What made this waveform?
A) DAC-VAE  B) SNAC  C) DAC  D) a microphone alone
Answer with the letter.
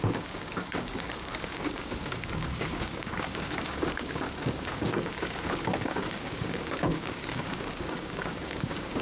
C